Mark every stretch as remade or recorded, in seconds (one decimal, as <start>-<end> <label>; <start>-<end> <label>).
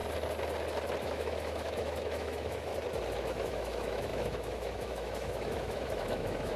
0.0-1.0 recorded; 1.0-2.7 remade; 2.7-3.2 recorded; 3.2-6.6 remade